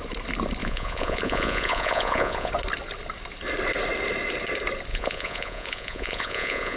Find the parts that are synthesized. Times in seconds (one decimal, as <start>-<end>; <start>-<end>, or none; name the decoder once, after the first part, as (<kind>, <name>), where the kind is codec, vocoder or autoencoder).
0.6-2.5 (vocoder, Vocos); 4.9-6.8